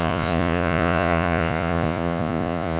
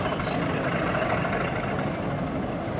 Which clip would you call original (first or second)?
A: second